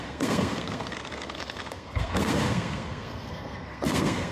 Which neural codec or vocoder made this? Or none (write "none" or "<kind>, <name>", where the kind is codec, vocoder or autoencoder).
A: codec, SNAC